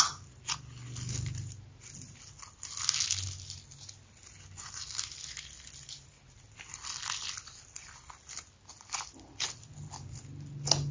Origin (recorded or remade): recorded